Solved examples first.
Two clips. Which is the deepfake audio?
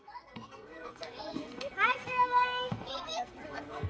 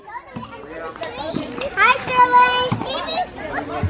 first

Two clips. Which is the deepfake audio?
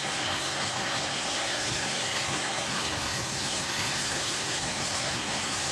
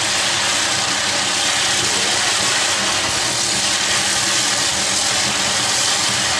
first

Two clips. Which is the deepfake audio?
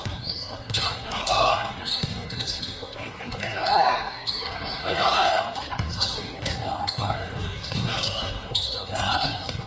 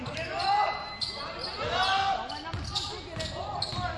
first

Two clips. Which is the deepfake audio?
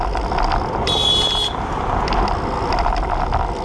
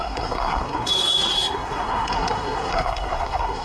second